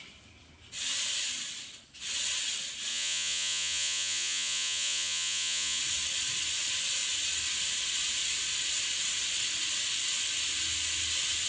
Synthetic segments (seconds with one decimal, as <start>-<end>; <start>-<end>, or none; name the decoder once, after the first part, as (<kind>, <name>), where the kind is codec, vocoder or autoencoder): 2.9-5.8 (vocoder, Vocos)